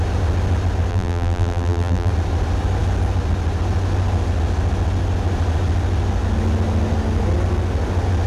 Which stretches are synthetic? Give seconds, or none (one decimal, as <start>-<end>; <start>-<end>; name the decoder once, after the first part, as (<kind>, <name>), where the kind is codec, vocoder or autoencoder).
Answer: 0.9-2.1 (vocoder, BigVGAN v2)